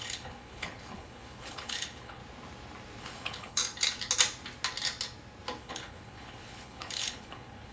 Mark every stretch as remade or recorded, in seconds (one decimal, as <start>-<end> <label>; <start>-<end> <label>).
0.0-2.2 remade; 2.2-3.0 recorded; 3.0-3.6 remade; 3.6-5.6 recorded; 5.6-7.7 remade